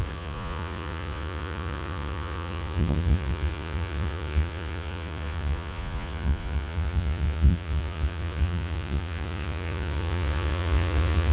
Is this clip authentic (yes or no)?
no